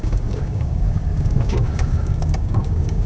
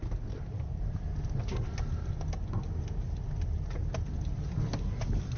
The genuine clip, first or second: second